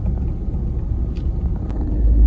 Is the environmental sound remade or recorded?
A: recorded